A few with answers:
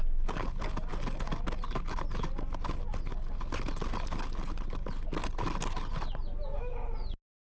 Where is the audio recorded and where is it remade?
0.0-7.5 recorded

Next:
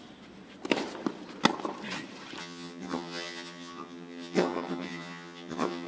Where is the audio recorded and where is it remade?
0.0-2.4 recorded; 2.4-5.9 remade